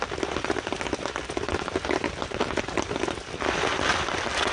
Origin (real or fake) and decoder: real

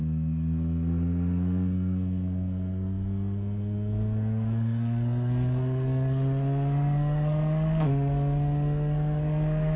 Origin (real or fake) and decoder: fake, codec, SNAC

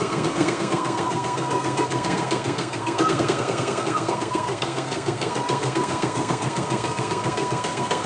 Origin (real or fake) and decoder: fake, codec, SNAC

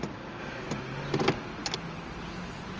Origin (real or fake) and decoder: real